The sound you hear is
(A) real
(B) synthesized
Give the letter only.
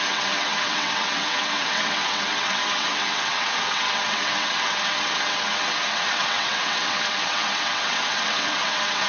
B